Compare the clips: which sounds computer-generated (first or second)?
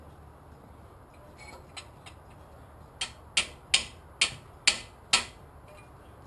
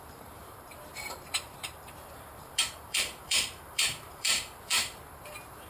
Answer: second